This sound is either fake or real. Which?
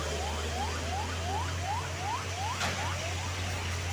real